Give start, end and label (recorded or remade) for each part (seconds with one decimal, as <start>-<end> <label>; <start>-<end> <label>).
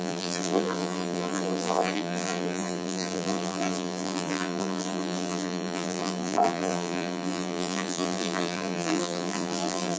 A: 0.0-10.0 remade